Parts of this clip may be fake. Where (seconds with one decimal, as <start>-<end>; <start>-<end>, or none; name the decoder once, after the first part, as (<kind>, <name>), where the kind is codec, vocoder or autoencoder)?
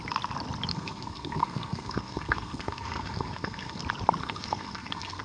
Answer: 0.7-3.8 (codec, SNAC); 4.2-5.2